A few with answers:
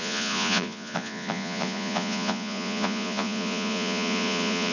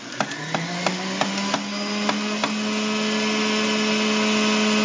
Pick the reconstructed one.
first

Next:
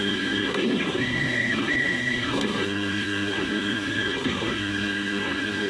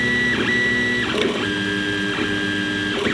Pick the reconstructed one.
first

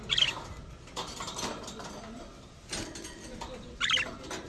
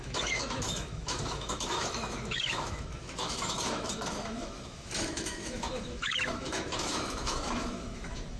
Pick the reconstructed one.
second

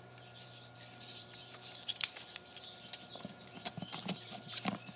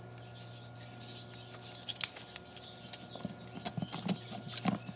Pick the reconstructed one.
first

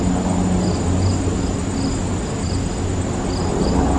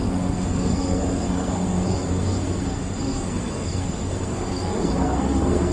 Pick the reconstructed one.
second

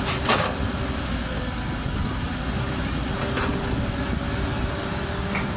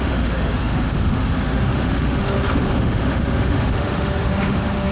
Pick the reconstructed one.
second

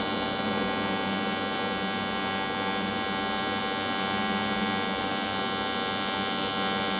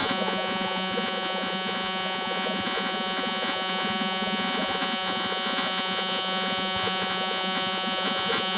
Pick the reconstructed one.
second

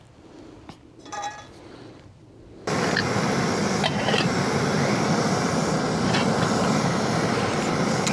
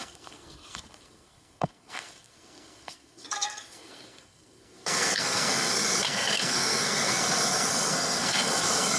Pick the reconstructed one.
second